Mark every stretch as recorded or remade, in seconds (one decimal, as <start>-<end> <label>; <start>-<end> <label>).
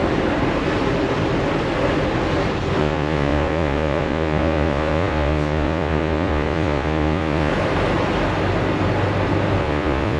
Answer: 0.0-2.8 recorded; 2.8-7.5 remade; 7.5-9.6 recorded; 9.6-10.2 remade